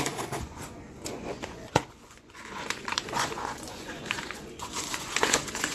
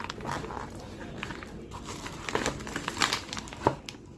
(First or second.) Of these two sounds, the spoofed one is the first